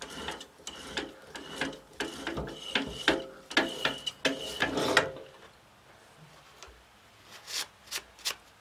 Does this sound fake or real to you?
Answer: real